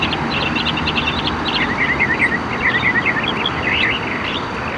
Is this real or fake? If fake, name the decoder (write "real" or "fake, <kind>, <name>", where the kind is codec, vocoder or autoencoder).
real